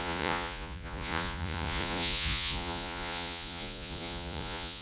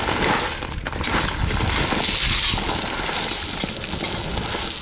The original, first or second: second